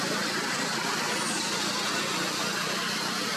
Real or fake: real